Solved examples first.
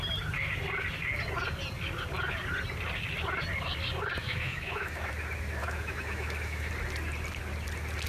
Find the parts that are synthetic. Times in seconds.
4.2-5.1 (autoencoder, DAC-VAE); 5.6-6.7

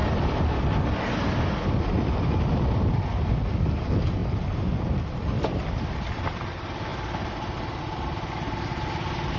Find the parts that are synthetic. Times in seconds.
4.2-5.8 (vocoder, BigVGAN v2)

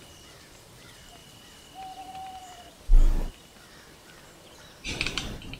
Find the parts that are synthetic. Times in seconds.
0.0-1.2 (vocoder, BigVGAN v2); 4.6-5.6